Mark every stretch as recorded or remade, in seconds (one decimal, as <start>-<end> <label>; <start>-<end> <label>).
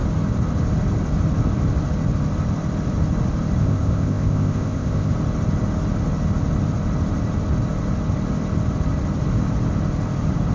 0.0-3.6 recorded; 3.6-5.1 remade; 5.1-10.5 recorded